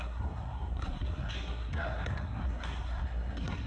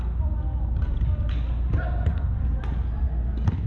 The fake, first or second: first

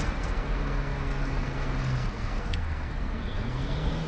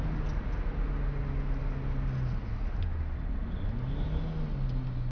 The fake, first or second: first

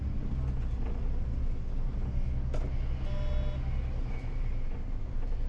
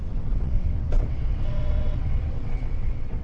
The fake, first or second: second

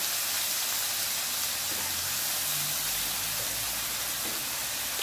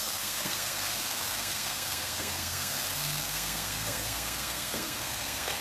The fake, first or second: second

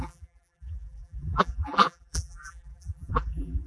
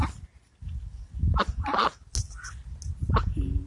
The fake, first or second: first